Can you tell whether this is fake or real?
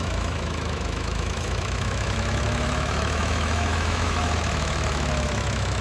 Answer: fake